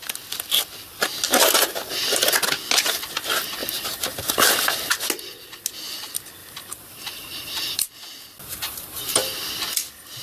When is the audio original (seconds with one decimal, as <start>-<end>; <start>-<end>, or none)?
0.0-3.6; 4.2-6.4; 7.9-8.6; 9.4-10.2